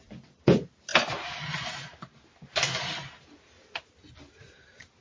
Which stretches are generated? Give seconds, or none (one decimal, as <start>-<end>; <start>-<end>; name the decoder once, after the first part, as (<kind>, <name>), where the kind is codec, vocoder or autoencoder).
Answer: none